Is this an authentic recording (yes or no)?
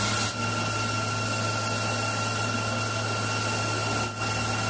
yes